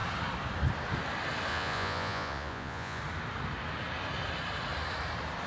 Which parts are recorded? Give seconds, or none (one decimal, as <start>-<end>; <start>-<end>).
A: 0.0-1.5; 3.0-5.5